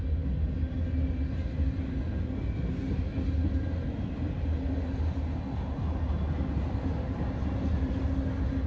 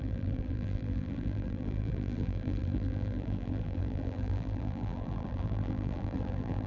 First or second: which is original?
first